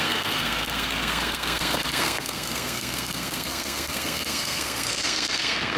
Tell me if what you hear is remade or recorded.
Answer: remade